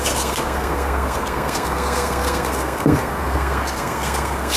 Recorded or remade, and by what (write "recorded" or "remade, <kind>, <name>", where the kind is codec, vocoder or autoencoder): remade, codec, SNAC